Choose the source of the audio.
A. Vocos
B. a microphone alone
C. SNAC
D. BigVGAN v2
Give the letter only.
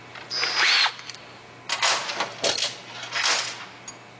B